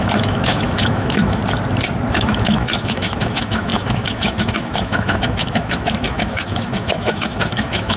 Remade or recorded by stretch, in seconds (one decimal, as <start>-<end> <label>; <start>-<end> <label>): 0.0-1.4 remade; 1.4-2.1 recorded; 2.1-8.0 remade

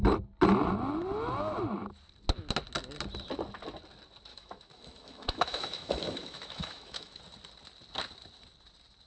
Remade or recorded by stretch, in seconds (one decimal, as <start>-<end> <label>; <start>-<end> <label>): 0.0-4.3 recorded; 4.3-7.2 remade; 7.2-9.1 recorded

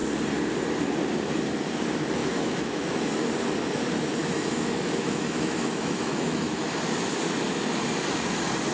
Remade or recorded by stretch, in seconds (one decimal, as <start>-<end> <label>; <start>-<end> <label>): 0.0-2.2 recorded; 2.2-3.3 remade; 3.3-4.2 recorded; 4.2-6.6 remade; 6.6-8.7 recorded

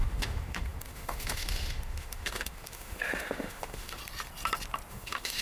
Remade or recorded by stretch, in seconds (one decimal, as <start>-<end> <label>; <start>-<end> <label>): 0.0-4.0 remade; 4.0-4.9 recorded; 4.9-5.4 remade

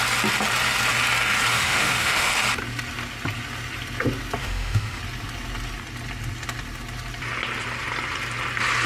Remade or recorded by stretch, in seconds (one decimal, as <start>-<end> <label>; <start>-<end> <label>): 0.0-1.5 recorded; 1.5-2.3 remade; 2.3-4.4 recorded; 4.4-5.0 remade; 5.0-8.9 recorded

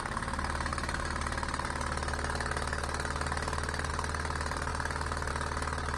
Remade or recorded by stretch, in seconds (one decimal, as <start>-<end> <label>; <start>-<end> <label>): 0.0-6.0 recorded